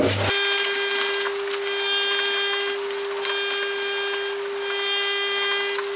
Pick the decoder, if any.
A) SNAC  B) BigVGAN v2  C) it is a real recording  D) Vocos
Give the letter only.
C